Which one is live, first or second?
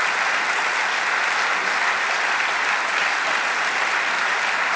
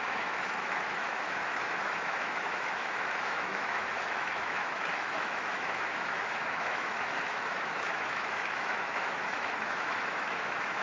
first